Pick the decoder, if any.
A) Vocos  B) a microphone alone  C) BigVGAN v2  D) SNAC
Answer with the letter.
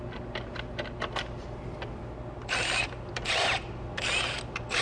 B